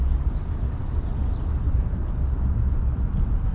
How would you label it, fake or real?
real